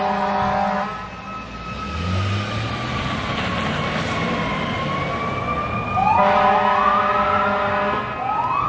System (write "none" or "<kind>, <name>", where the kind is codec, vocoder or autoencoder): none